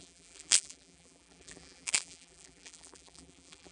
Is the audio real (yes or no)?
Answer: no